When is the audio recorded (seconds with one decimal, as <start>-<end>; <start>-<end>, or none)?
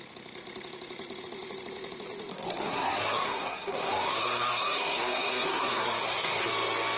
0.0-2.3; 6.5-7.0